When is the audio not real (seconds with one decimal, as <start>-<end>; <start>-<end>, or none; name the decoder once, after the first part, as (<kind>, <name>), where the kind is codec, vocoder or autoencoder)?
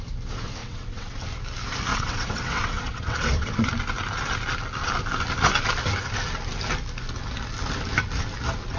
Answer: 0.6-1.2 (vocoder, WaveNeXt); 1.9-3.7